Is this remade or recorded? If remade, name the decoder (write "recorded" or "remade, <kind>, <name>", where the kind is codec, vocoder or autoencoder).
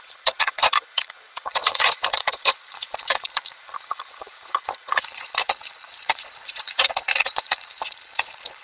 remade, vocoder, Vocos